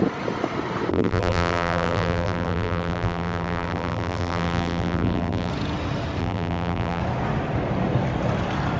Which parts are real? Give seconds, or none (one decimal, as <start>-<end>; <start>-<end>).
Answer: 0.0-0.9; 5.5-6.2; 7.0-8.8